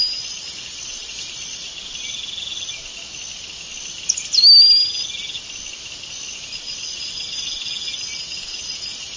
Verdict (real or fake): real